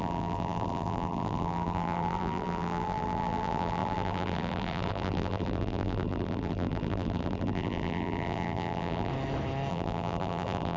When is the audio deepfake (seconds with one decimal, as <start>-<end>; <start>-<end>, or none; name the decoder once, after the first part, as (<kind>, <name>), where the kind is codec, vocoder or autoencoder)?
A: 0.0-9.1 (vocoder, BigVGAN v2); 9.7-10.8